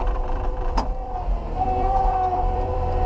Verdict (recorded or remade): remade